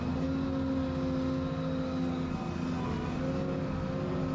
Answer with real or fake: real